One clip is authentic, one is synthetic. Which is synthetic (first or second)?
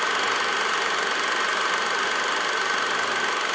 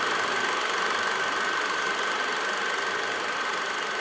second